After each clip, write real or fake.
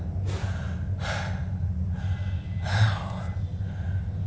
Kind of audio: real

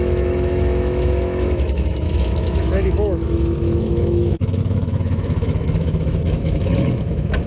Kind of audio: fake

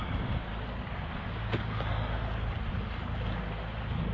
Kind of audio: real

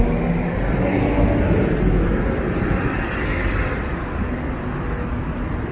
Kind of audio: real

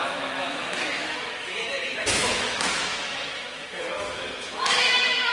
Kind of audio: fake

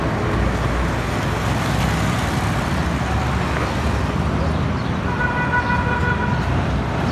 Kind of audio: real